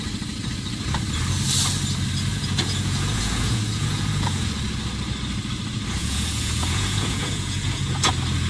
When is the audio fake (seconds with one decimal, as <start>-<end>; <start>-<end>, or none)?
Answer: 2.3-4.5; 6.0-8.1